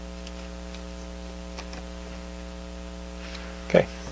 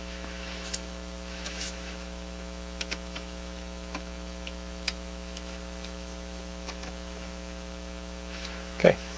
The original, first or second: first